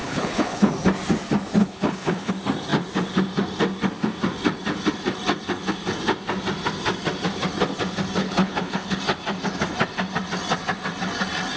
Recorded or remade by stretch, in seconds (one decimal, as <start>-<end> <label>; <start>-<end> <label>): 0.0-0.7 remade; 0.7-1.6 recorded; 1.6-2.3 remade; 2.3-8.2 recorded; 8.2-9.0 remade; 9.0-11.6 recorded